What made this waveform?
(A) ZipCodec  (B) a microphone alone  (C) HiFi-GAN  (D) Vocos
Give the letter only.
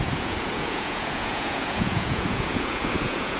D